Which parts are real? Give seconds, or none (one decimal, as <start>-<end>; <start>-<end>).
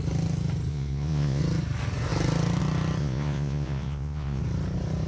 0.0-0.7; 1.4-3.0; 4.4-5.1